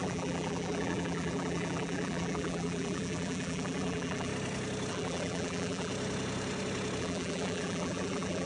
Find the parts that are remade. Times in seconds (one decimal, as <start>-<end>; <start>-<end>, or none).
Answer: 0.0-4.3; 4.9-5.9; 7.0-8.5

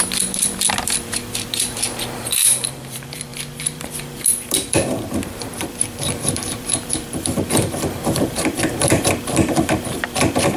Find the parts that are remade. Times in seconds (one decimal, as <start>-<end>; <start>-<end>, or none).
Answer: 0.0-10.6